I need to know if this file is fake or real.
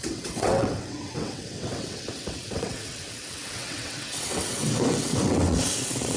fake